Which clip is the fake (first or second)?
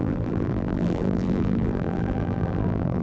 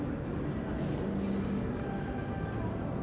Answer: first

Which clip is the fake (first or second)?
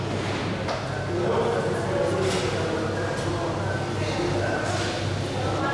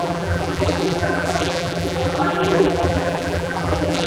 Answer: second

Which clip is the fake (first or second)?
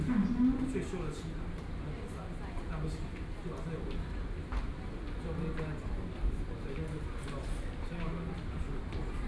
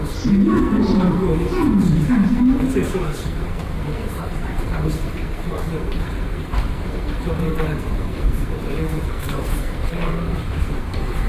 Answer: second